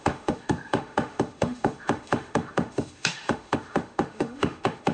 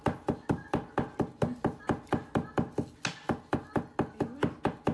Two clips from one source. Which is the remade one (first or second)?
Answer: first